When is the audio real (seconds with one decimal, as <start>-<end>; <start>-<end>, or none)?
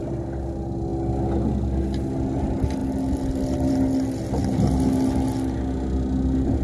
0.0-6.6